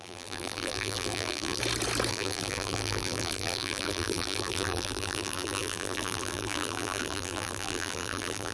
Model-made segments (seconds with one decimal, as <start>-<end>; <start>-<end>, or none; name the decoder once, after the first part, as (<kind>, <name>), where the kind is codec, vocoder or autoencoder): 0.0-1.6 (vocoder, BigVGAN v2); 2.1-8.5